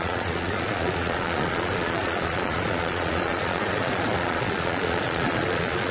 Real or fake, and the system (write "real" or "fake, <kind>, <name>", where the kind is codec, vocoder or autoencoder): fake, vocoder, Vocos